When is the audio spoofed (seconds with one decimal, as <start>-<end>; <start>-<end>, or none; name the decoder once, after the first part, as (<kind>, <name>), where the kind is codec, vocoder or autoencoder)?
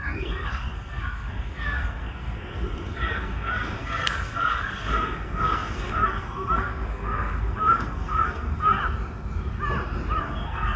0.0-8.8 (codec, SNAC); 10.2-10.8